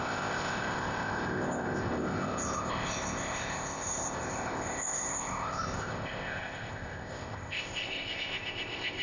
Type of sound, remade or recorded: remade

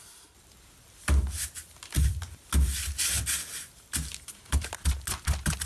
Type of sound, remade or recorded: recorded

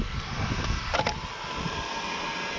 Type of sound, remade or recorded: recorded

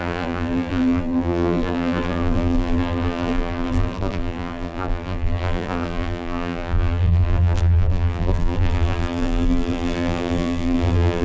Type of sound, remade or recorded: remade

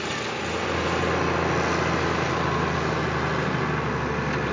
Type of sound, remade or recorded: recorded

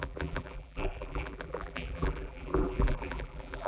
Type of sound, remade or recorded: remade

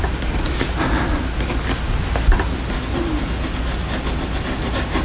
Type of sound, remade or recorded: recorded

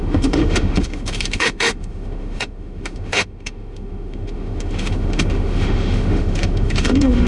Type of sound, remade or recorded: remade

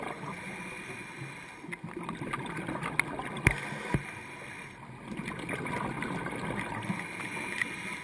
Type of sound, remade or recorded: recorded